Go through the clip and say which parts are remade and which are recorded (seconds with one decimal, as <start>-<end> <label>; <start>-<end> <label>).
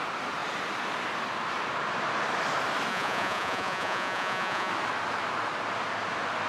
0.0-2.9 recorded; 2.9-4.7 remade; 4.7-6.5 recorded